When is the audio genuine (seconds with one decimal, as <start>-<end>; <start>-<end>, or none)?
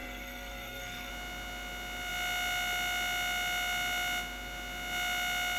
1.1-5.6